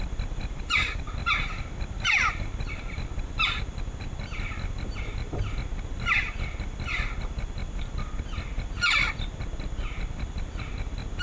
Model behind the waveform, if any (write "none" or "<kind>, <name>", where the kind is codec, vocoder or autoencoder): vocoder, BigVGAN v2